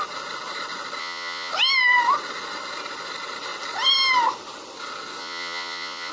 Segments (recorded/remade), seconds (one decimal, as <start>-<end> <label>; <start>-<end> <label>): 0.0-1.0 recorded; 1.0-1.5 remade; 1.5-5.2 recorded; 5.2-6.1 remade